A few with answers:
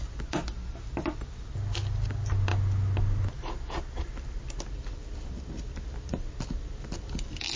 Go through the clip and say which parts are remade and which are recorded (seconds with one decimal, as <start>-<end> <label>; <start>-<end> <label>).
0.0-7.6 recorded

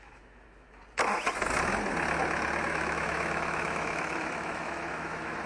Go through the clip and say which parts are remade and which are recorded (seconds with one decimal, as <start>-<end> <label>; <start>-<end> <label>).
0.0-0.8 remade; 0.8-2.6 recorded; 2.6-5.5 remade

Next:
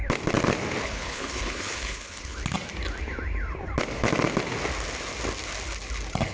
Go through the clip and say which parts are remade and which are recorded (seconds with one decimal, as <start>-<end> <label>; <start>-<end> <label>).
0.0-0.8 recorded; 0.8-2.4 remade; 2.4-6.3 recorded